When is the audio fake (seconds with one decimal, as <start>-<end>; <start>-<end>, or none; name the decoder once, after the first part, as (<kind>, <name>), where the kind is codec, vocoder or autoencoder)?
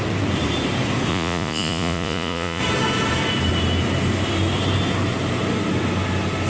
1.1-2.6 (vocoder, Vocos)